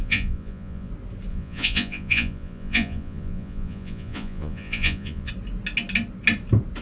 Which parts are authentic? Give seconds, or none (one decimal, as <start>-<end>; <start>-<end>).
0.9-1.3; 5.3-6.8